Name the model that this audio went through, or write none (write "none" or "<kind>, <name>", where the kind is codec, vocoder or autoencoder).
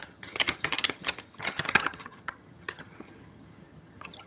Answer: vocoder, HiFi-GAN